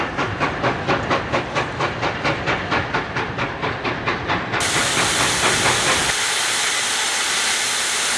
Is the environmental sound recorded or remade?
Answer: recorded